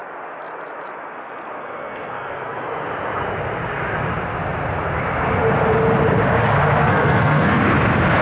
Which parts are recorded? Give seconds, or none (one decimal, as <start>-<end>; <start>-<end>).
0.0-1.6; 2.6-6.8; 7.6-8.2